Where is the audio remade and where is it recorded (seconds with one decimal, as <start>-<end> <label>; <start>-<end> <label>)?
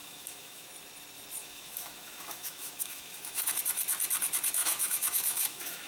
0.0-0.7 remade; 0.7-1.4 recorded; 1.4-3.6 remade; 3.6-4.6 recorded; 4.6-5.9 remade